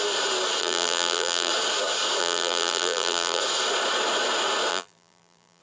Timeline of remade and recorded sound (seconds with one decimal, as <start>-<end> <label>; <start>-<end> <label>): 0.0-0.6 recorded; 0.6-1.5 remade; 1.5-2.2 recorded; 2.2-3.4 remade; 3.4-4.7 recorded; 4.7-5.6 remade